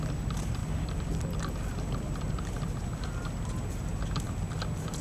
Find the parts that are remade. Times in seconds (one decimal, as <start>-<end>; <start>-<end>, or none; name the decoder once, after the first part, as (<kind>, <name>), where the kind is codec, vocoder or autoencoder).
0.6-3.6 (vocoder, BigVGAN v2)